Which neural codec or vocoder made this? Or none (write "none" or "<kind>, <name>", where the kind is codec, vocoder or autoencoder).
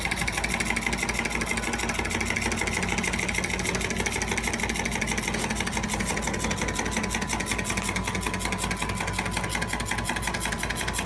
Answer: none